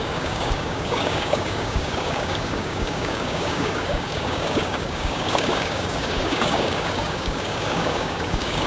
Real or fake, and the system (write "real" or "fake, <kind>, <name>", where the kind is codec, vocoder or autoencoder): fake, codec, DAC